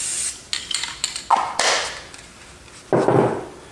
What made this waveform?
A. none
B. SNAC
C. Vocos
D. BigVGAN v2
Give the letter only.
A